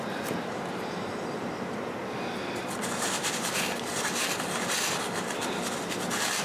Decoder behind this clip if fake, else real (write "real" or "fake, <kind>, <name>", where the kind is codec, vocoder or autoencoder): real